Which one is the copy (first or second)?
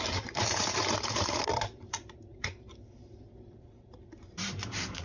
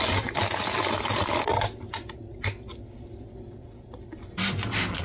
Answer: first